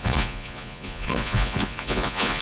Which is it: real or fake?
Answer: fake